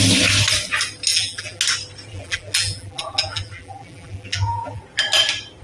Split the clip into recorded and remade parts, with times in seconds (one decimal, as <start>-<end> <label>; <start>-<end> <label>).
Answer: 0.0-1.1 recorded; 1.1-1.6 remade; 1.6-2.1 recorded; 2.1-4.8 remade; 4.8-5.6 recorded